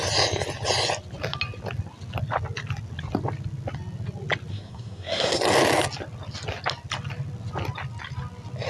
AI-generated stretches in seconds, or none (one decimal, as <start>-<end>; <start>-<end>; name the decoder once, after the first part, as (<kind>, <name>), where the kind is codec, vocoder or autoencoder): 4.5-5.4 (codec, SNAC)